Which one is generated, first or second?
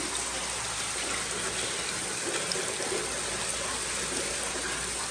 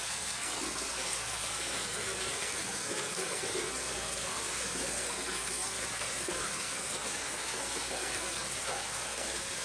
second